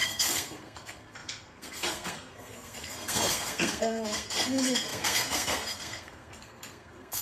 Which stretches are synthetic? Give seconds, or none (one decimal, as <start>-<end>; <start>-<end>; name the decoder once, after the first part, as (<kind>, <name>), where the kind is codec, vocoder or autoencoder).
0.0-7.2 (codec, SNAC)

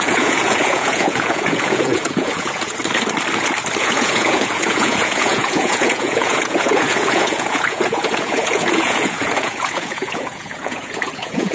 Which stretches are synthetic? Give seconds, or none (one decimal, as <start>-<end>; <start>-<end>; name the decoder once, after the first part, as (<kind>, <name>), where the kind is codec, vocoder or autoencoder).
0.0-2.8 (vocoder, Vocos); 3.8-11.5

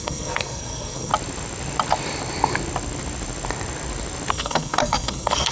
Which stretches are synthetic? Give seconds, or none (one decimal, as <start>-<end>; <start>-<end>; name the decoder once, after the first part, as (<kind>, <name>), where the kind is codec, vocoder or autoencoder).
0.0-1.1 (codec, SNAC); 4.3-5.5